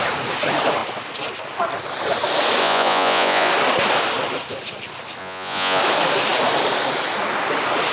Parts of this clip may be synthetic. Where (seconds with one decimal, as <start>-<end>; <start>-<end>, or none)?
2.6-3.5; 5.2-5.8